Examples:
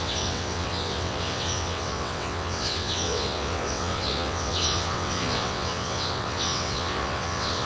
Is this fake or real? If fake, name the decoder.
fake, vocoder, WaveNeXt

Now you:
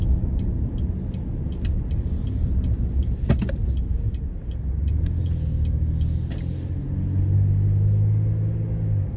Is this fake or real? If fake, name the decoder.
real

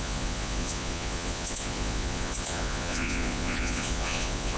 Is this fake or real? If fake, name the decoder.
fake, vocoder, Vocos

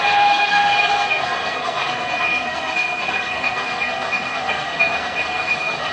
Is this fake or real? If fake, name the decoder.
fake, codec, SNAC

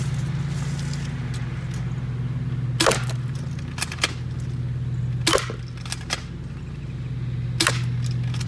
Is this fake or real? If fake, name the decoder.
real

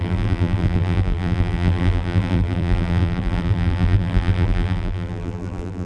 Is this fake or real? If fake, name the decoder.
fake, vocoder, BigVGAN v2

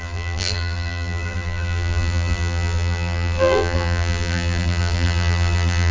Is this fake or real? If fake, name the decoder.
fake, vocoder, BigVGAN v2